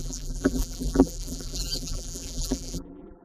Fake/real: fake